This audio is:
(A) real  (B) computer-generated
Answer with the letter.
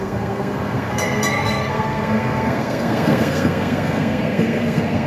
B